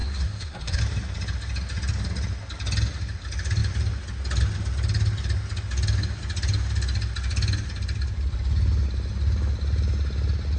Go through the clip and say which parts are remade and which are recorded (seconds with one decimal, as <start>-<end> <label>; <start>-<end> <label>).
0.0-0.8 remade; 0.8-10.6 recorded